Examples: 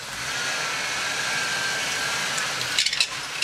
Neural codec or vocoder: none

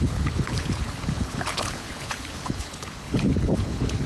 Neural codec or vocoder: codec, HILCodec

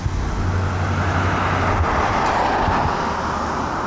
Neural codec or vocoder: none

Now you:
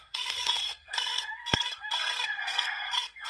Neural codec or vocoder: codec, SNAC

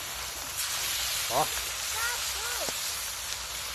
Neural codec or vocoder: none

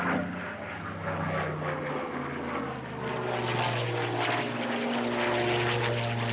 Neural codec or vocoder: none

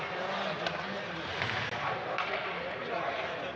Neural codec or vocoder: none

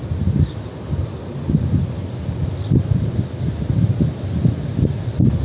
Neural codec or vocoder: none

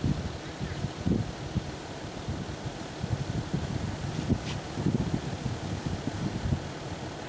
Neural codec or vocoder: none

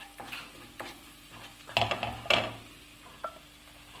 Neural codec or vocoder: none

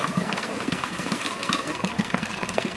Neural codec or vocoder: codec, SNAC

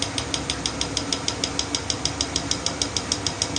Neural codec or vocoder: none